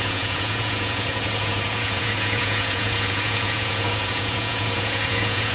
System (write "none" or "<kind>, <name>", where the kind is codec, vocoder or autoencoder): vocoder, Vocos